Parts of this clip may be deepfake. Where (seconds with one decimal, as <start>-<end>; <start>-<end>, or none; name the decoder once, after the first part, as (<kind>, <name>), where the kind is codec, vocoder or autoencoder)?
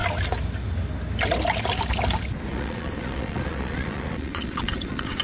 2.5-5.2 (vocoder, Vocos)